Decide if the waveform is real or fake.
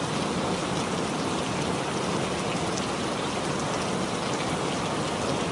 real